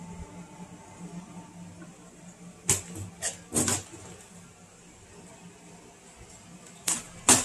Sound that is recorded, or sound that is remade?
recorded